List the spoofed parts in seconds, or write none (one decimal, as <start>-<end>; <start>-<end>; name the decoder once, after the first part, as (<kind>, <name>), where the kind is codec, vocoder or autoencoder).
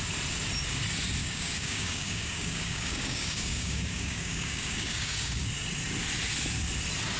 1.2-5.5 (codec, DAC)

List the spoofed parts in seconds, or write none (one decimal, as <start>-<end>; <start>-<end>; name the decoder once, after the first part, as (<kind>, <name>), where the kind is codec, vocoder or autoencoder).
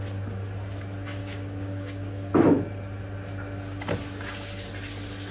1.2-2.3 (codec, DAC)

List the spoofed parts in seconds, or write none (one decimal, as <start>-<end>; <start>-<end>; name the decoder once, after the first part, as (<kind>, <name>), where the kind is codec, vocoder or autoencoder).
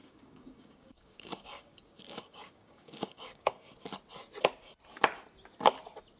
0.0-3.7 (codec, DAC)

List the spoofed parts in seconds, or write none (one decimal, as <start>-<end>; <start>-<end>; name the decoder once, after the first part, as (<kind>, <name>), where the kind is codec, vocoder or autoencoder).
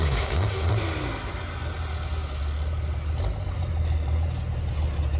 0.0-0.7 (codec, DAC)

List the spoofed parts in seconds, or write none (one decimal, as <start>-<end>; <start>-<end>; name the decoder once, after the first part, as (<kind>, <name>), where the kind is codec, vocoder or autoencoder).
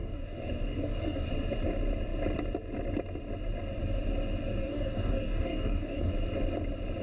0.0-1.3 (codec, DAC); 4.5-6.1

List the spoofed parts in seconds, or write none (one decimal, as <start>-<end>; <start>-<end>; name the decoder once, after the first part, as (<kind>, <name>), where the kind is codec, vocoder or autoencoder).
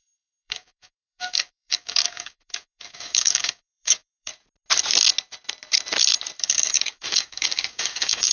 0.0-4.3 (codec, DAC); 6.4-8.3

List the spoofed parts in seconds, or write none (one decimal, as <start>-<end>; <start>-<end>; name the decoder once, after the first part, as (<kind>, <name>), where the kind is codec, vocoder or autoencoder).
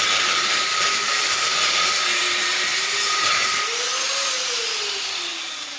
0.9-1.5 (codec, DAC); 5.3-5.8